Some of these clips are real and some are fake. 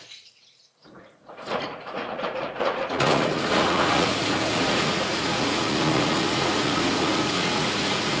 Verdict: fake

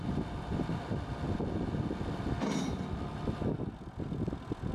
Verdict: real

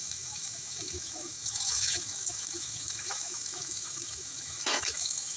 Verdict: fake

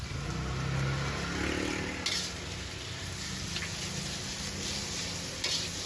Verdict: real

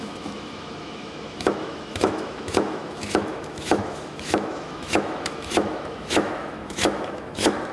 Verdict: fake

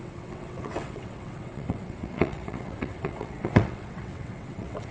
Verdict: fake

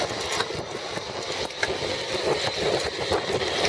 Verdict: real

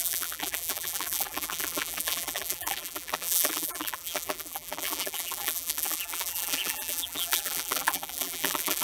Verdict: fake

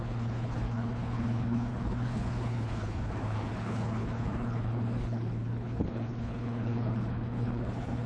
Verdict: fake